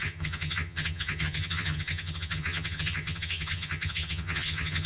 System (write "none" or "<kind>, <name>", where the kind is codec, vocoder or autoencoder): vocoder, HiFi-GAN